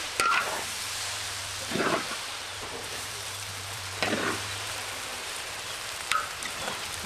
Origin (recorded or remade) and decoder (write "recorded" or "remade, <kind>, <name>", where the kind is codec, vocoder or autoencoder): remade, vocoder, BigVGAN v2